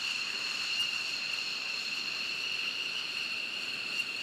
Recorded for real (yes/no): no